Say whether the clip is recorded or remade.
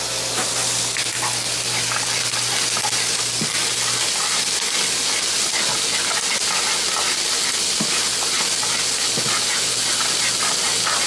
recorded